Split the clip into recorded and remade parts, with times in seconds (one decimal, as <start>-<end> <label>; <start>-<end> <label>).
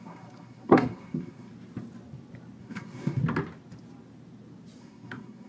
0.0-1.5 remade; 1.5-2.6 recorded; 2.6-3.2 remade; 3.2-4.8 recorded; 4.8-5.5 remade